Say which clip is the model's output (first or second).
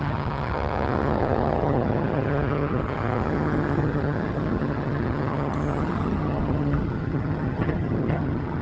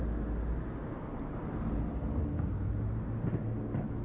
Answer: first